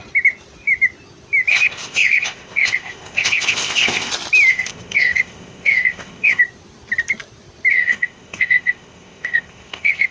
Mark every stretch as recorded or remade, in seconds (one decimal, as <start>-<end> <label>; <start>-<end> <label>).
0.0-1.5 recorded; 1.5-4.1 remade; 4.1-4.5 recorded; 4.5-6.4 remade; 6.4-7.7 recorded; 7.7-10.1 remade